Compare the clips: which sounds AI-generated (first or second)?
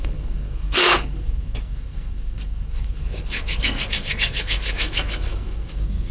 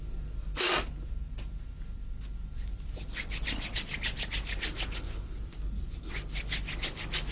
first